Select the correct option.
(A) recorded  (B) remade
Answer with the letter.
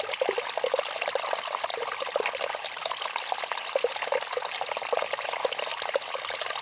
A